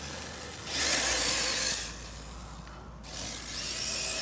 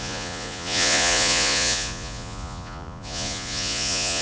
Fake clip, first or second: second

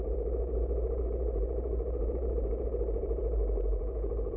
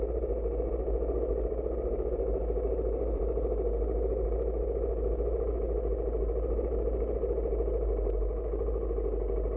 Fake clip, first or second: first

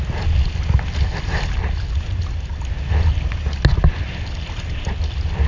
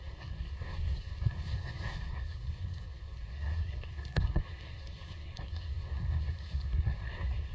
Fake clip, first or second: second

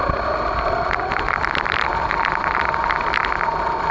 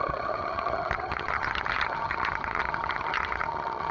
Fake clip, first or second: second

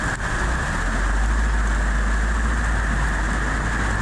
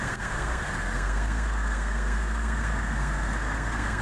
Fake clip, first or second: second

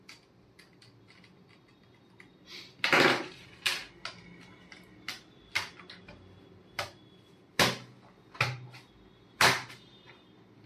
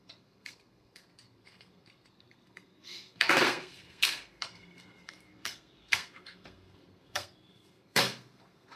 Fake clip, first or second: second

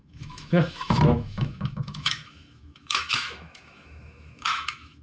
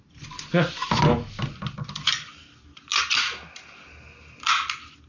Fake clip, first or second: first